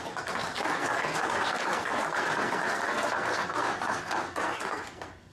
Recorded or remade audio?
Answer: remade